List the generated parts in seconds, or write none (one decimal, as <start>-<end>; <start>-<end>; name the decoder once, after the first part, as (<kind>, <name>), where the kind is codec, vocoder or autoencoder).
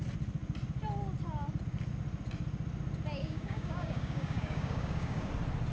3.2-5.3 (codec, DAC)